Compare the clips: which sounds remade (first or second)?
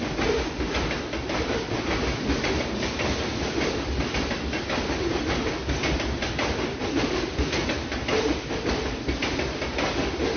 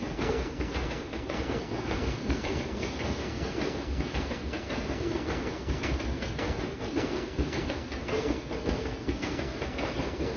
second